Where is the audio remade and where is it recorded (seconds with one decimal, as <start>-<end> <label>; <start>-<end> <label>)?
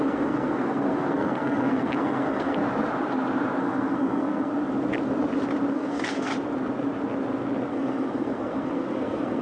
0.0-2.6 remade; 2.6-3.6 recorded; 3.6-4.5 remade; 4.5-5.7 recorded; 5.7-6.3 remade; 6.3-7.7 recorded; 7.7-9.4 remade